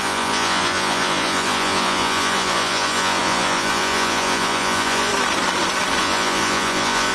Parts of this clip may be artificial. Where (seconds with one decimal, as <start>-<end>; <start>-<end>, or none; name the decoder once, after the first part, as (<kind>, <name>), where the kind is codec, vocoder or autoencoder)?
0.0-5.1 (vocoder, Vocos); 6.0-7.1